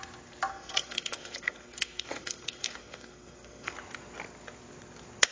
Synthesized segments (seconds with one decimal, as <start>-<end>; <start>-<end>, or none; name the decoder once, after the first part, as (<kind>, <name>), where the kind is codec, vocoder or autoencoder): 0.5-3.7 (codec, SNAC)